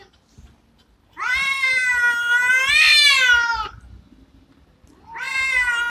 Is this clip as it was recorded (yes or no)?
yes